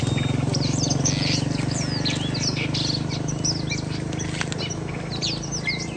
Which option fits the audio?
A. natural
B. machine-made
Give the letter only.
A